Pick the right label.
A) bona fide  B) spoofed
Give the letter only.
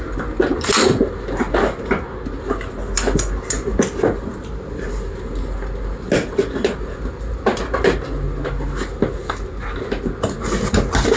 A